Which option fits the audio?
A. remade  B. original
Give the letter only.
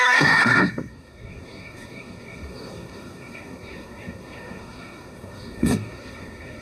A